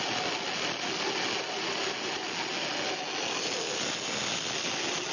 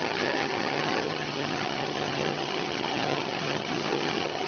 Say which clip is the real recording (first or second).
first